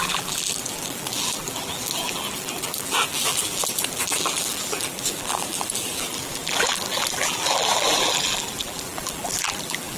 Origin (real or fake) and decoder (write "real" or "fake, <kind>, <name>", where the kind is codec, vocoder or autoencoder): fake, vocoder, BigVGAN v2